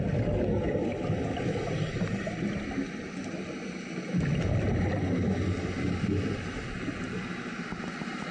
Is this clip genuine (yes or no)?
yes